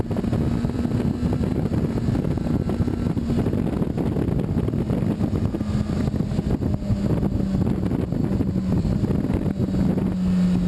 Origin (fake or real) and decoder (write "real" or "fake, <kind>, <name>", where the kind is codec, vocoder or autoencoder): real